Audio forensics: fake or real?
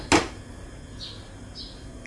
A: real